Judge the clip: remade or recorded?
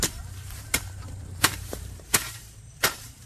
remade